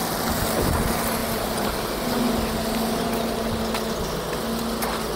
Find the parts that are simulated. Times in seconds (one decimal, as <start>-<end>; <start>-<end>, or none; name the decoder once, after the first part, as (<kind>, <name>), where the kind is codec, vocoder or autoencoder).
none